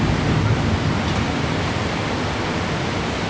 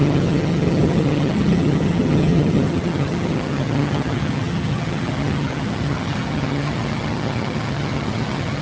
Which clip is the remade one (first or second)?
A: second